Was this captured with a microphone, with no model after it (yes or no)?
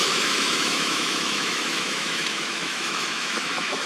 no